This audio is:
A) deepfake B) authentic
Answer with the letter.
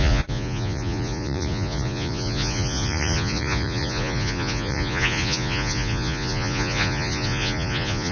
A